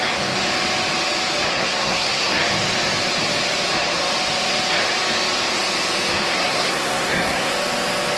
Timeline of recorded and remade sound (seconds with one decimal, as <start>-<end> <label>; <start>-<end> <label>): 0.0-1.5 recorded; 1.5-2.4 remade; 2.4-6.3 recorded; 6.3-7.5 remade; 7.5-8.2 recorded